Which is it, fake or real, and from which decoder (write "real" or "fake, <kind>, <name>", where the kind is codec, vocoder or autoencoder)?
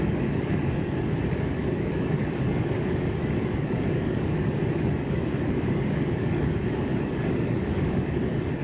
fake, codec, DAC